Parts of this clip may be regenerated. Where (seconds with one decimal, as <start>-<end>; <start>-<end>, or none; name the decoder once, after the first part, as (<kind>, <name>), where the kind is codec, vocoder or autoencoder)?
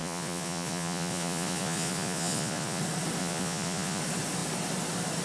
0.0-2.8 (vocoder, Vocos); 3.2-4.0